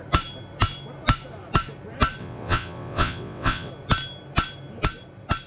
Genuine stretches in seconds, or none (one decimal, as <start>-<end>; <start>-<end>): 0.0-2.2; 3.7-5.5